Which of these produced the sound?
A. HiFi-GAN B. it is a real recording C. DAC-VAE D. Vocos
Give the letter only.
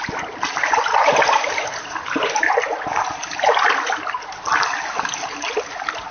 B